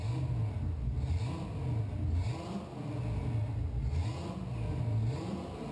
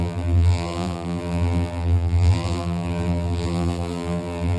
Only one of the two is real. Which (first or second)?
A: first